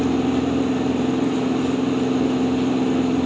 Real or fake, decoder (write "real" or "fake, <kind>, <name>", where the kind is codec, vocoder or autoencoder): real